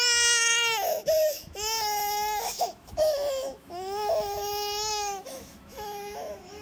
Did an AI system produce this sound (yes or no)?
yes